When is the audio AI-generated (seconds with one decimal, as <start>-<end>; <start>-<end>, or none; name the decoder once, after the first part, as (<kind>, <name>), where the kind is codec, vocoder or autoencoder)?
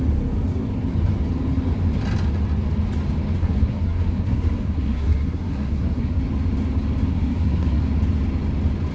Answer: 3.4-6.2 (codec, SNAC); 7.1-7.8